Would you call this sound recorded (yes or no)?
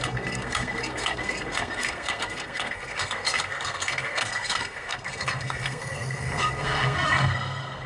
no